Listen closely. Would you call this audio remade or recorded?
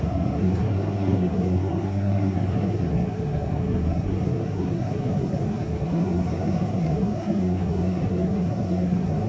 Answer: remade